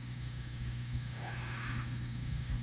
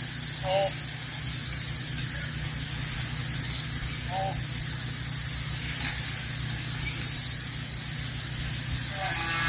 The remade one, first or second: first